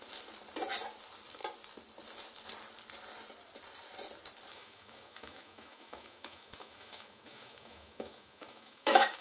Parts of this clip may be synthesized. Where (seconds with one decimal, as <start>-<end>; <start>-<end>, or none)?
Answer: 4.5-9.2